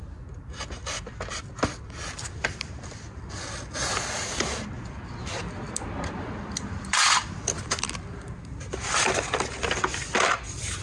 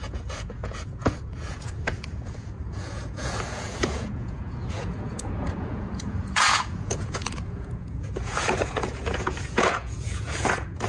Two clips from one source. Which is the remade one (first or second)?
second